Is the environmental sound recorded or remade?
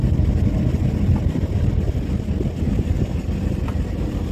recorded